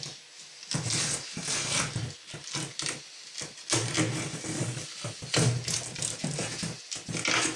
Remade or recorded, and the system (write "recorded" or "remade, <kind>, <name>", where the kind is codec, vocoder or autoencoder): recorded